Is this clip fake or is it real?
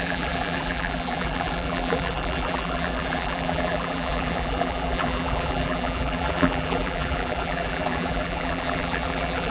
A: fake